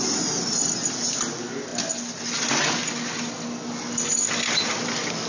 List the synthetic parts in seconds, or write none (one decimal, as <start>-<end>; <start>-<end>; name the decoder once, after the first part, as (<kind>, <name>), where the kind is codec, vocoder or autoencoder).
none